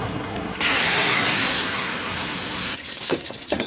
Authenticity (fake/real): fake